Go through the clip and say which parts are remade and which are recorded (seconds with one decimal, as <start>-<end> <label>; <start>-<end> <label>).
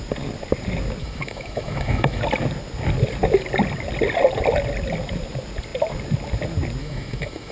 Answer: 0.0-1.0 recorded; 1.0-2.2 remade; 2.2-6.8 recorded; 6.8-7.5 remade